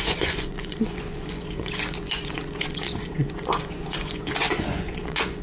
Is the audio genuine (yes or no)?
no